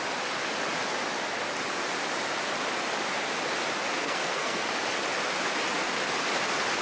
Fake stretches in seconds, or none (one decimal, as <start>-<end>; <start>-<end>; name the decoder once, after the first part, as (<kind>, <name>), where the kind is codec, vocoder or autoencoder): 4.0-4.6 (codec, SNAC)